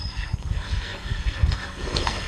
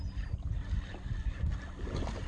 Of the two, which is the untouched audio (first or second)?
second